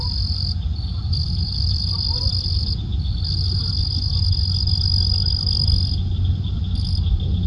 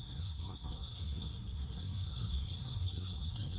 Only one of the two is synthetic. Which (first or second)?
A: second